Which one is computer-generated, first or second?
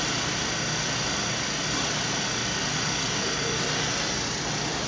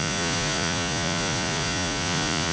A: second